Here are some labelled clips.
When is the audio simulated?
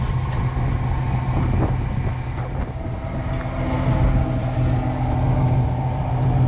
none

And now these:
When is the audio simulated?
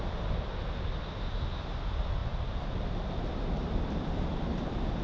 none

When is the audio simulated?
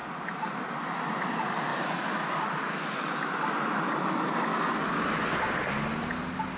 none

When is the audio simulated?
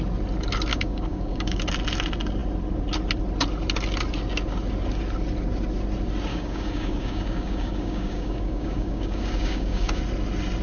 0.7-1.6 (codec, DAC); 6.3-10.0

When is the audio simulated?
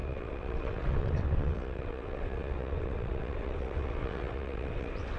0.0-5.2 (vocoder, WaveNeXt)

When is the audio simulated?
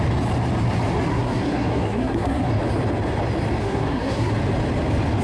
1.1-2.5 (codec, SNAC); 3.6-4.3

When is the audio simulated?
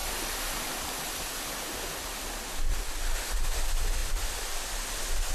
none